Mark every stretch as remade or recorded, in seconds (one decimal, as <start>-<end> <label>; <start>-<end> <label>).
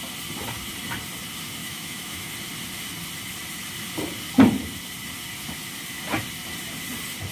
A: 0.0-1.6 recorded; 1.6-2.3 remade; 2.3-7.3 recorded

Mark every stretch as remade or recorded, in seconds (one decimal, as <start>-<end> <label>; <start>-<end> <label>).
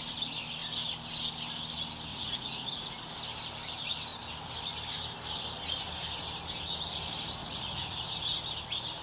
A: 0.0-2.1 recorded; 2.1-3.0 remade; 3.0-7.4 recorded; 7.4-8.1 remade; 8.1-9.0 recorded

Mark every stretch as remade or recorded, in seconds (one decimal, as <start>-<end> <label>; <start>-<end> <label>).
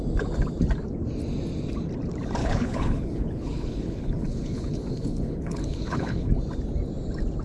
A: 0.0-2.4 recorded; 2.4-6.3 remade; 6.3-7.4 recorded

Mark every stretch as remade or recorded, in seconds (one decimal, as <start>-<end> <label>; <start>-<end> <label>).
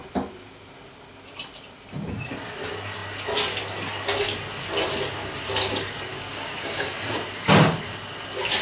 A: 0.0-6.1 recorded; 6.1-6.9 remade; 6.9-8.6 recorded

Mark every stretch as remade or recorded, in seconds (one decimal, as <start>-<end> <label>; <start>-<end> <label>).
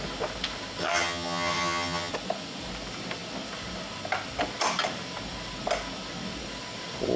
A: 0.0-0.8 recorded; 0.8-2.1 remade; 2.1-7.2 recorded